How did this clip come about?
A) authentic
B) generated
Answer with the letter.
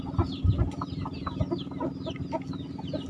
A